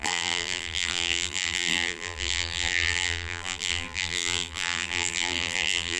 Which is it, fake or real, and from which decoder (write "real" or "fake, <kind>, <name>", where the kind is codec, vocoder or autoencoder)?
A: fake, vocoder, BigVGAN v2